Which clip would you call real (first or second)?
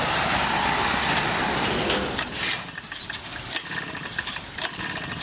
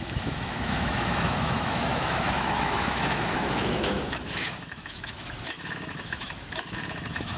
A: first